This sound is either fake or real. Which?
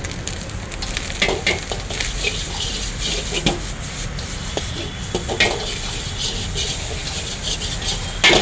real